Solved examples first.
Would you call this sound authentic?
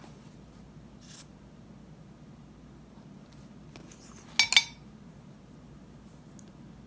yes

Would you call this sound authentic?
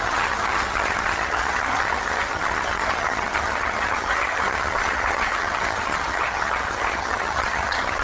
no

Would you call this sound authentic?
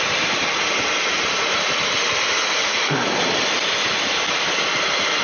yes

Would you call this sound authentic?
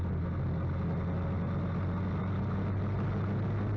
yes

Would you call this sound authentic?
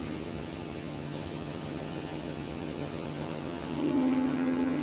no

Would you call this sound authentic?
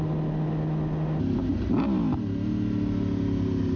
yes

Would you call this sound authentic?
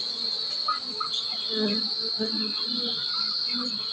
yes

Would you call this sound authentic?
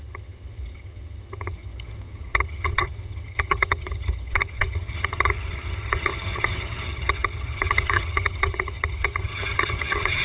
no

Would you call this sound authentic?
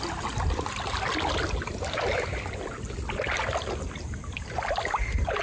yes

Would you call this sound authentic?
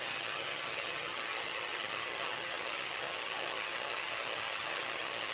no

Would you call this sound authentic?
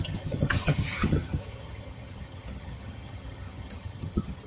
no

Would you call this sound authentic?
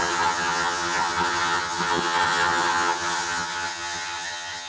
no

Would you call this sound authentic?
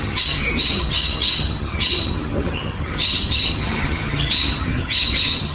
no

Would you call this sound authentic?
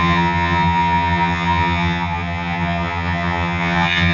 no